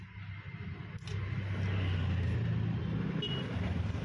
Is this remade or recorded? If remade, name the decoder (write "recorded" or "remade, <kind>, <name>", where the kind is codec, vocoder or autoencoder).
recorded